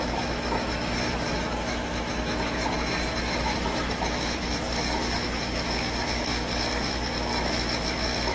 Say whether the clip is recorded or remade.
remade